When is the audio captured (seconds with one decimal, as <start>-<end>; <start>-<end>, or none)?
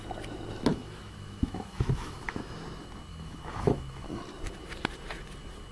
0.0-0.7; 2.6-3.1; 4.2-5.7